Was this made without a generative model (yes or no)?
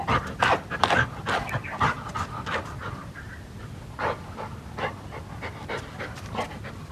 yes